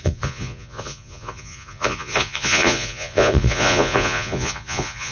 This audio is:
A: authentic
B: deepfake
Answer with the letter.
B